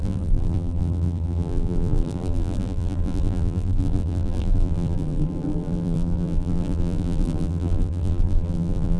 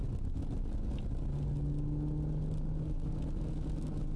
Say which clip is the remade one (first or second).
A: first